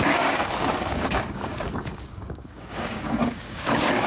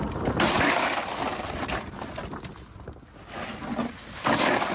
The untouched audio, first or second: second